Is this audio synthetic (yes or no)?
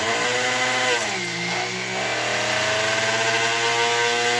no